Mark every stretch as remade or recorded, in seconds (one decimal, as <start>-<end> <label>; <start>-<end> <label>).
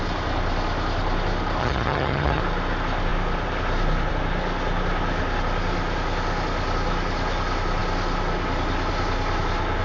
0.0-1.6 recorded; 1.6-2.4 remade; 2.4-9.8 recorded